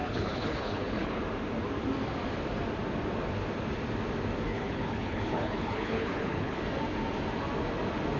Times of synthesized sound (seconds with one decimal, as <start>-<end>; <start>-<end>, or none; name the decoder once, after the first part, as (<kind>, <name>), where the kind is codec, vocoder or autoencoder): 0.0-1.2 (codec, HILCodec); 4.5-6.6